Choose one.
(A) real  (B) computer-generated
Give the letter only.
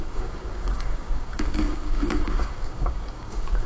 B